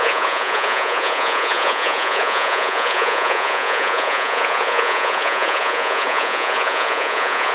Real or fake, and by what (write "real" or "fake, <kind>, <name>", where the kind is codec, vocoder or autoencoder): fake, vocoder, Vocos